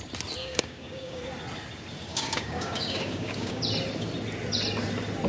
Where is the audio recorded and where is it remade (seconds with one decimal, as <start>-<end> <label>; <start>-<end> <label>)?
0.0-0.4 recorded; 0.4-1.2 remade; 1.2-2.1 recorded; 2.1-3.6 remade; 3.6-5.3 recorded